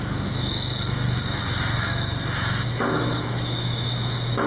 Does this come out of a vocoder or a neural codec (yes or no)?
yes